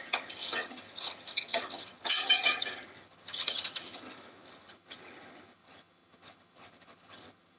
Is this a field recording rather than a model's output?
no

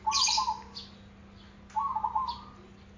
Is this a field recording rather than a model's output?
yes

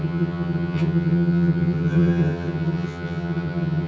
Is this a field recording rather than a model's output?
no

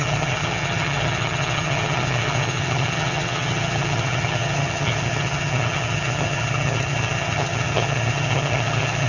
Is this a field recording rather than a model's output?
no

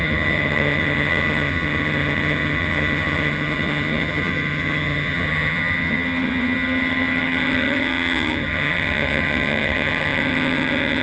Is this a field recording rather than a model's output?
no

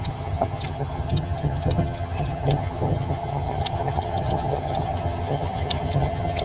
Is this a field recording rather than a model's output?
no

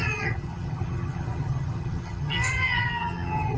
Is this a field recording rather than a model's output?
no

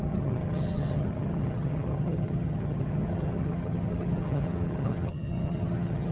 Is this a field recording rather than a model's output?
no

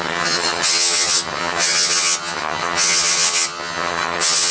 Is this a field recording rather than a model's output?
no